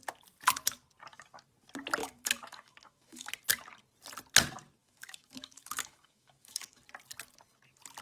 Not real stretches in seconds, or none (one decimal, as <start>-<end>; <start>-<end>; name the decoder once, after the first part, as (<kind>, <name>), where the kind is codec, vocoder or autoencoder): 2.0-3.3 (autoencoder, DAC-VAE); 4.8-6.8